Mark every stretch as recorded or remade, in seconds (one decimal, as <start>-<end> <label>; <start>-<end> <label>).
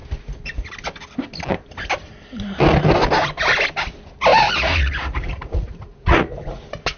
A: 0.0-4.3 recorded; 4.3-6.6 remade; 6.6-7.0 recorded